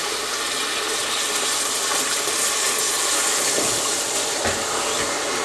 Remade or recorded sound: recorded